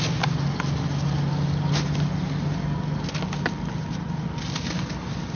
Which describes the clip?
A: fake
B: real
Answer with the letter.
B